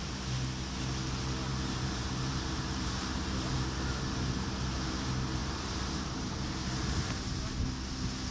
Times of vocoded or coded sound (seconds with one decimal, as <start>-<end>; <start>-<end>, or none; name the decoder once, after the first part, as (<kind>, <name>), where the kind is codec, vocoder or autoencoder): 1.5-3.5 (vocoder, BigVGAN v2); 5.4-6.4